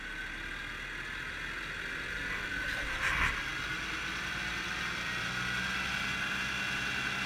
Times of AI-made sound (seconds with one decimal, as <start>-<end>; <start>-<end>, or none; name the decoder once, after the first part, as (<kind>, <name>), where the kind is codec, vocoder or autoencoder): none